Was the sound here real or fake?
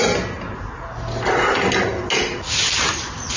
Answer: real